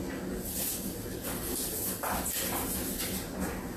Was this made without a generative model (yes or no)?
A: yes